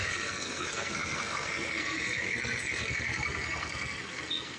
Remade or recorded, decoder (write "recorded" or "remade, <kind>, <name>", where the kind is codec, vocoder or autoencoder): remade, codec, SNAC